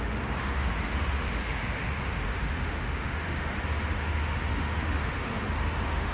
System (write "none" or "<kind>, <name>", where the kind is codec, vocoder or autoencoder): autoencoder, DAC-VAE